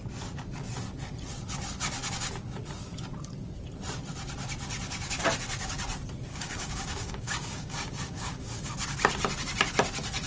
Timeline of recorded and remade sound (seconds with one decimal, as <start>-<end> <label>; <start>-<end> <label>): 0.0-6.3 recorded; 6.3-8.7 remade; 8.7-10.3 recorded